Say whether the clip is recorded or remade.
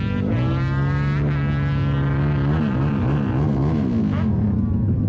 recorded